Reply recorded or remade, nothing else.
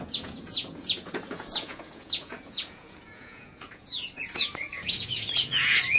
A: remade